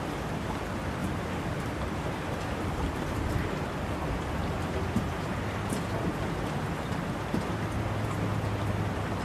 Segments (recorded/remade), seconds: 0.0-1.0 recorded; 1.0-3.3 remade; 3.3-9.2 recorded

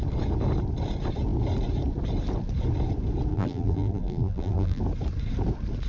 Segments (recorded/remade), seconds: 0.0-3.3 recorded; 3.3-4.8 remade; 4.8-5.9 recorded

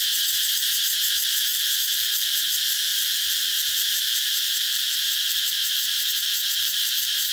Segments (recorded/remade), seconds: 0.0-1.5 recorded; 1.5-2.5 remade; 2.5-2.9 recorded; 2.9-7.3 remade

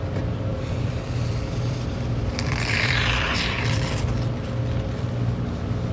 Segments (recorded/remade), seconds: 0.0-0.5 recorded; 0.5-4.0 remade; 4.0-5.9 recorded

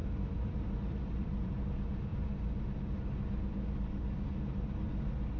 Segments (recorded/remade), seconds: 0.0-1.6 remade; 1.6-5.4 recorded